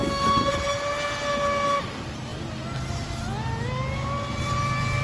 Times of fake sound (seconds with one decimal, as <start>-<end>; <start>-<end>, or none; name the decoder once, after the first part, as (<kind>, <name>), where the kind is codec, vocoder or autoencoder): 0.0-0.5 (autoencoder, DAC-VAE)